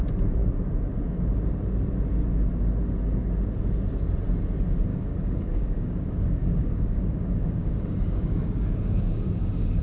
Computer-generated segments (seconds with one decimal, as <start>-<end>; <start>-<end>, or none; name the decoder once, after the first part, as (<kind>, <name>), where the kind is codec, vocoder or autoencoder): 4.9-9.8 (codec, DAC)